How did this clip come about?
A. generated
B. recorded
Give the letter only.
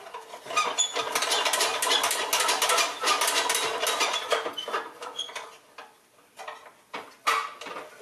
B